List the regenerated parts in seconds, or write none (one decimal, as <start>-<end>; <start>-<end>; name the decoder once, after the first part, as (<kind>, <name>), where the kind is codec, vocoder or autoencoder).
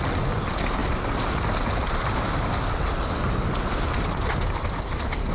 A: none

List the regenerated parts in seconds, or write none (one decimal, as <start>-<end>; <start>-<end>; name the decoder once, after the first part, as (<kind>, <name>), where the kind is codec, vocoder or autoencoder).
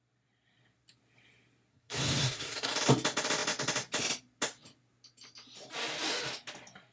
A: 1.7-2.7 (codec, SNAC)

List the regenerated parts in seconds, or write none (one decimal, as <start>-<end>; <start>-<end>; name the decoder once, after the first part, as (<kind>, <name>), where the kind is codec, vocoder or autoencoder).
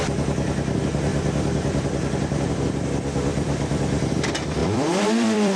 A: 1.1-2.5 (vocoder, BigVGAN v2); 3.3-4.1; 4.6-5.6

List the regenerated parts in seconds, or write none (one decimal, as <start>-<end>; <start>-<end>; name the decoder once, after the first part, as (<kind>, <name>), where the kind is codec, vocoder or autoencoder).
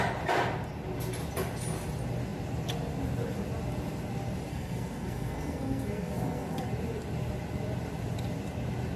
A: 4.5-6.7 (codec, SNAC)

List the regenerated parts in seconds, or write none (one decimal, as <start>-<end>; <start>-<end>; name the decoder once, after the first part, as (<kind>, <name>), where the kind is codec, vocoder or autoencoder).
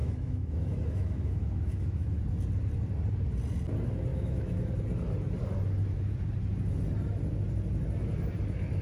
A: 0.0-2.2 (autoencoder, DAC-VAE); 4.1-4.7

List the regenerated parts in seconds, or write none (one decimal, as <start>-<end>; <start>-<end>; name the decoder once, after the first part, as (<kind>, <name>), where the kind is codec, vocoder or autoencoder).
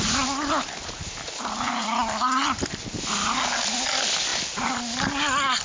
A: none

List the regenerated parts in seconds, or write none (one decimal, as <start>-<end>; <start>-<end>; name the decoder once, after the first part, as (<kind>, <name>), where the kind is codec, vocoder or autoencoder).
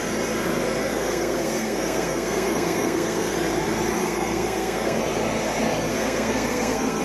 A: 0.8-3.3 (codec, SNAC); 4.0-5.0; 5.9-7.0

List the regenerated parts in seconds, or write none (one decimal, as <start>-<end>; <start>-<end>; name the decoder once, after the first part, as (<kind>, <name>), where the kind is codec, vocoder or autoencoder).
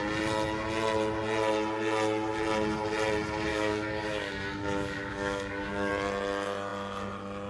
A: 3.5-5.9 (codec, DAC)